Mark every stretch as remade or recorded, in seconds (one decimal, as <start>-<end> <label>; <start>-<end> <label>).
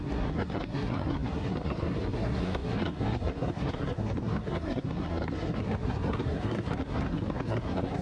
0.0-8.0 remade